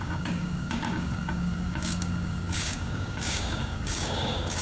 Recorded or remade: remade